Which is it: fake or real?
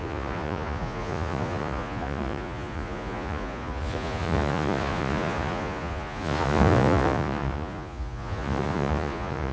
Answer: fake